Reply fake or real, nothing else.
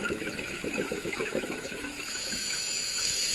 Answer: fake